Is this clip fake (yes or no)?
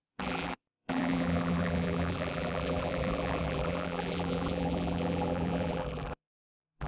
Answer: yes